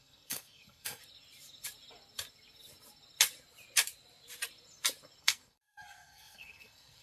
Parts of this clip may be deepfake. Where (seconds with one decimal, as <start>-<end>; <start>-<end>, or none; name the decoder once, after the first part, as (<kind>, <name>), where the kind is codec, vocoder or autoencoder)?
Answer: 0.0-1.0 (codec, SNAC); 5.2-7.0